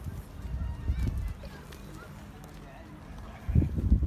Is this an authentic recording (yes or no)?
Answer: yes